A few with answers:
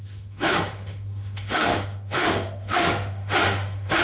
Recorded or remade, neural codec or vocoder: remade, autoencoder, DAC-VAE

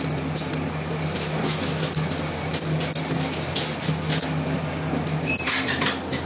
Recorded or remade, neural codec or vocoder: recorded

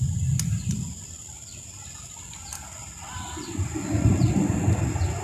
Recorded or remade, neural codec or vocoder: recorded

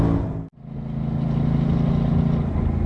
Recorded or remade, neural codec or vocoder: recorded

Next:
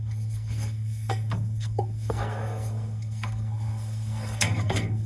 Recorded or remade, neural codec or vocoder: remade, codec, SNAC